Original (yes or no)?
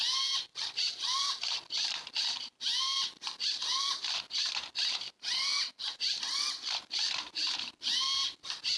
no